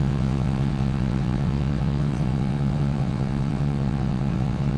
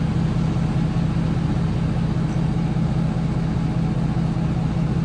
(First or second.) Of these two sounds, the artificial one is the first